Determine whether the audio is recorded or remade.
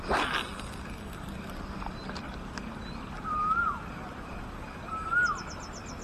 recorded